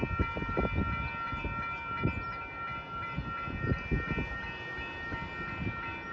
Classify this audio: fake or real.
real